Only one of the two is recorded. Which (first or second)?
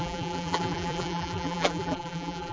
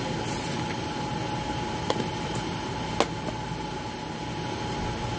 second